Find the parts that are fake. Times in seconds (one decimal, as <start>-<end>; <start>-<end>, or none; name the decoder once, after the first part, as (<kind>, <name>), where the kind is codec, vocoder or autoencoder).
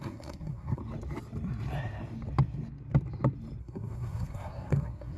0.0-0.8 (codec, SNAC); 3.6-5.2